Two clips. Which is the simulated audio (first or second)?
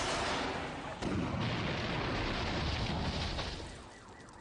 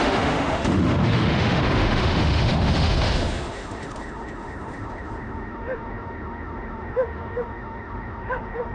second